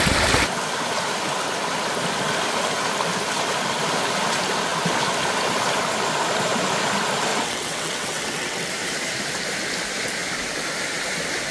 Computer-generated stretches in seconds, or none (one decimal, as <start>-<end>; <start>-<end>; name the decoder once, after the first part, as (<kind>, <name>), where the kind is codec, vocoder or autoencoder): 7.3-8.7 (vocoder, WaveNeXt)